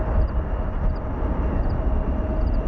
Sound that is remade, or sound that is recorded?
recorded